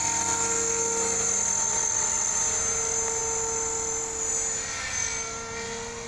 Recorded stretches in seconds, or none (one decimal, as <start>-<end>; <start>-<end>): 0.0-1.6; 2.4-6.1